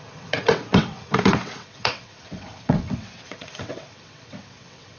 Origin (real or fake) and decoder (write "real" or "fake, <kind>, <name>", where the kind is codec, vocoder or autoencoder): fake, vocoder, WaveNeXt